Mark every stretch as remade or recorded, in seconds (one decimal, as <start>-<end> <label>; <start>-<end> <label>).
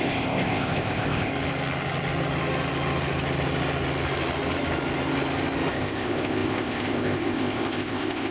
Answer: 0.0-1.3 remade; 1.3-5.7 recorded; 5.7-8.3 remade